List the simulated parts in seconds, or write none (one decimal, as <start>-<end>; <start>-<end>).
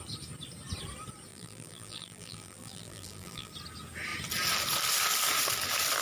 1.3-3.5